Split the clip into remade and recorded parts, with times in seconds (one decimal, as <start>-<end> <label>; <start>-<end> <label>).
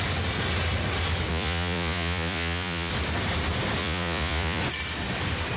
0.0-1.3 recorded; 1.3-2.9 remade; 2.9-3.8 recorded; 3.8-4.6 remade; 4.6-5.6 recorded